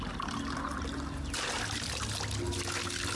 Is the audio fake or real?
real